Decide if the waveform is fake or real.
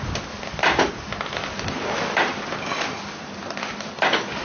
real